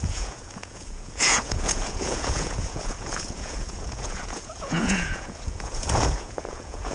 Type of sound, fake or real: fake